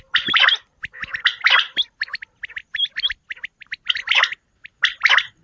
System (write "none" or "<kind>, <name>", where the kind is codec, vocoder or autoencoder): none